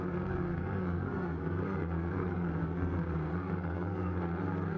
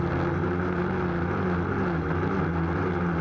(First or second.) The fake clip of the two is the first